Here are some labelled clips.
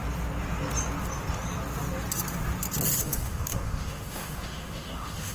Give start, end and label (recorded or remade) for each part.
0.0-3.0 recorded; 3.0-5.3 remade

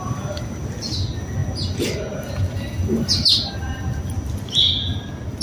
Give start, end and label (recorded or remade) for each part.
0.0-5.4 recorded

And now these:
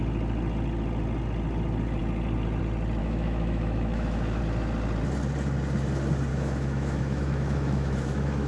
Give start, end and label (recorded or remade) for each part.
0.0-3.0 recorded; 3.0-4.4 remade; 4.4-6.3 recorded; 6.3-8.5 remade